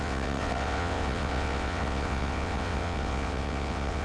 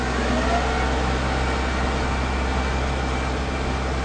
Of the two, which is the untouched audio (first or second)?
second